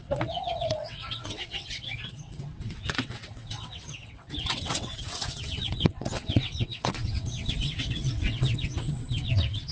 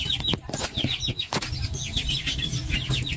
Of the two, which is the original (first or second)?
second